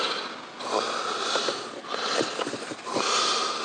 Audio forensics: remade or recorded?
recorded